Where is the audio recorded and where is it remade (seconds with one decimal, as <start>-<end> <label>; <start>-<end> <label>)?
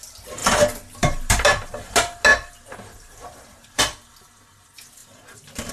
0.0-0.4 recorded; 0.4-1.3 remade; 1.3-2.3 recorded; 2.3-3.8 remade; 3.8-5.0 recorded; 5.0-5.7 remade